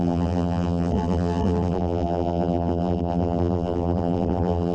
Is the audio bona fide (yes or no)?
no